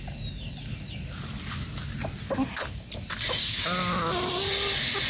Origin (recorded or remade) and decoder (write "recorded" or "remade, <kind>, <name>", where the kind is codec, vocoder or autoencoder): recorded